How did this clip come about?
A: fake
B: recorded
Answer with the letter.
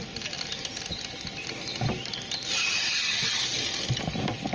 B